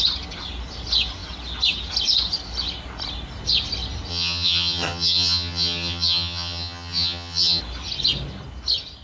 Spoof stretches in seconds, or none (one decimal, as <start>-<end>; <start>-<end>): 4.1-7.6